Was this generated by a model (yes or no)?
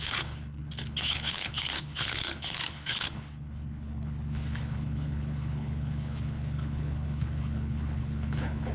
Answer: yes